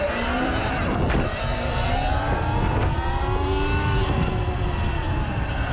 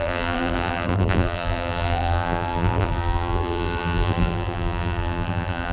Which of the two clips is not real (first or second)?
second